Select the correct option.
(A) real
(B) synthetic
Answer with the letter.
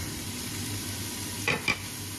B